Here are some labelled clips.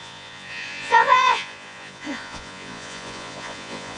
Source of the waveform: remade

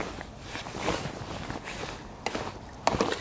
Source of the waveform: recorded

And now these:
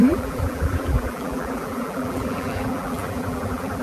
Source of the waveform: remade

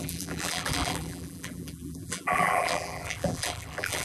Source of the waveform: remade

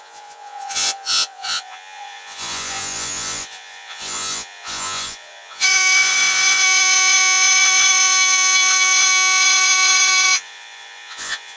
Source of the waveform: remade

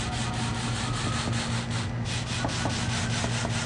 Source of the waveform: recorded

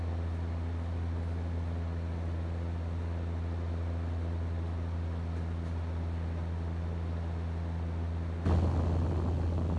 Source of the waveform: recorded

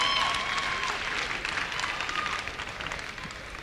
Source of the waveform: recorded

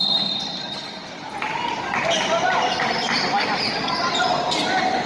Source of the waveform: recorded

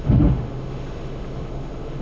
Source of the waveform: remade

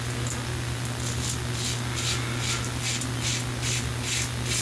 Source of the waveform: recorded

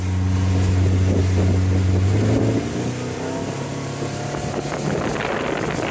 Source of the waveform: recorded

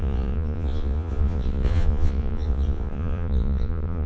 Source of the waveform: remade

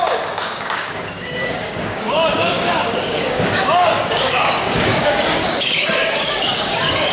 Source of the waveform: remade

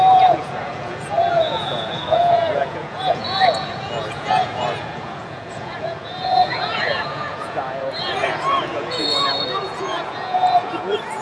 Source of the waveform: remade